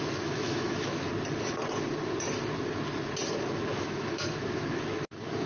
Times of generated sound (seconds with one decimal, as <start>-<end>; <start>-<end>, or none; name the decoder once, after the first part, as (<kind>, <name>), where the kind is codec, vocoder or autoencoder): 0.0-1.1 (autoencoder, DAC-VAE); 3.3-5.5